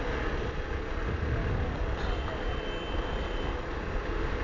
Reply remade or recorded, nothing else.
recorded